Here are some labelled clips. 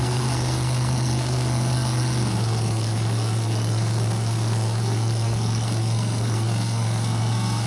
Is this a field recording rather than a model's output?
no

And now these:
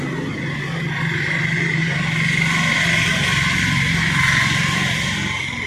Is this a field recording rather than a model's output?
yes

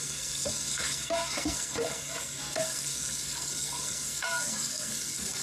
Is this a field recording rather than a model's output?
no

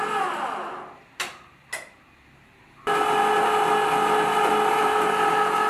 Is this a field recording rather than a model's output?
yes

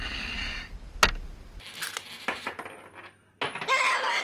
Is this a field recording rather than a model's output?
yes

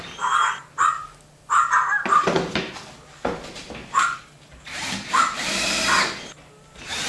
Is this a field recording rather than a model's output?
yes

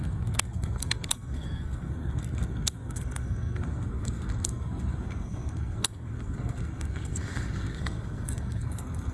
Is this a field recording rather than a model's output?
no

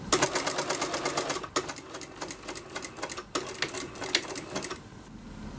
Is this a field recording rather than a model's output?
yes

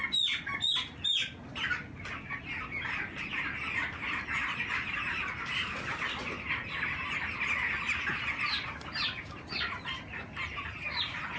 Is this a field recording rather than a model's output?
yes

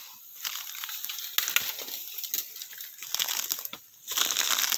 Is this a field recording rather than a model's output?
yes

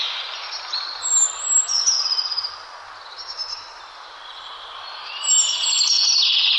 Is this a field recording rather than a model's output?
yes